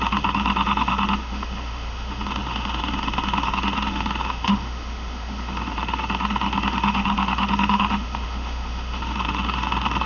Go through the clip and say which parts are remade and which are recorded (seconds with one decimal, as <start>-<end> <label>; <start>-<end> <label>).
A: 0.0-10.1 remade